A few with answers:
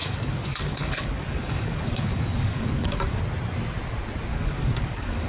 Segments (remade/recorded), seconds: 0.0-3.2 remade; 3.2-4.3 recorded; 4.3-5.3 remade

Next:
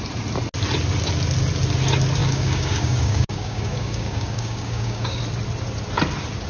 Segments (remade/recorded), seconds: 0.0-2.2 recorded; 2.2-5.2 remade; 5.2-6.5 recorded

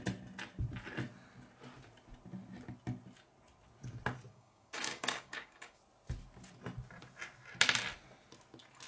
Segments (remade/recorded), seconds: 0.0-4.3 recorded; 4.3-5.8 remade; 5.8-8.9 recorded